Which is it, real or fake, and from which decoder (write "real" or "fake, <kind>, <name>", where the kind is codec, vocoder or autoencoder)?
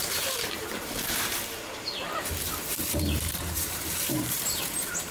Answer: fake, vocoder, BigVGAN v2